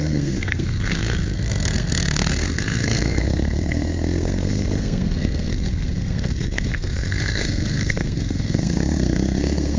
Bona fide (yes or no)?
no